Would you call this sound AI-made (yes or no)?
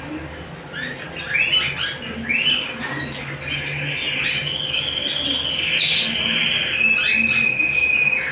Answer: no